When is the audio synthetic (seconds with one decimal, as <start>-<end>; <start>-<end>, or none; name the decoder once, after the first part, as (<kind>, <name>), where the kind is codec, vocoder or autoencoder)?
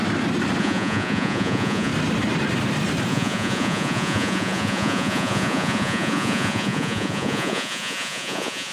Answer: 0.6-1.9 (vocoder, Vocos); 3.1-8.7